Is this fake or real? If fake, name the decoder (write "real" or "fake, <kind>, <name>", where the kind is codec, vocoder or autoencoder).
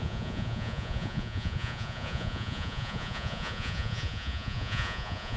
fake, vocoder, Vocos